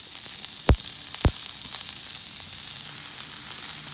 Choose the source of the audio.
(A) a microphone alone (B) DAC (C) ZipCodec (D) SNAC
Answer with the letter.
A